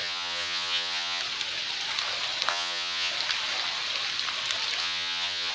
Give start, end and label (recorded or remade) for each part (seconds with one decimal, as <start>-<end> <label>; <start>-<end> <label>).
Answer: 0.0-1.2 remade; 1.2-2.5 recorded; 2.5-3.1 remade; 3.1-4.8 recorded; 4.8-5.5 remade